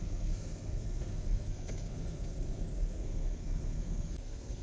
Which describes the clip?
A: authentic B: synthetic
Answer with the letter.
B